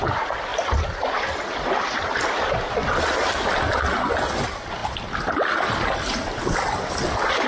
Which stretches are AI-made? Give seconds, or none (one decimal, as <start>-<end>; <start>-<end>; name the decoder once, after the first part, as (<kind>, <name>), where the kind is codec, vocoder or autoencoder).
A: 0.5-3.0 (vocoder, BigVGAN v2); 4.8-6.9